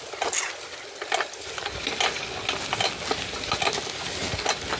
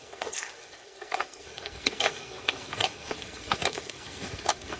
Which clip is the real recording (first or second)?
first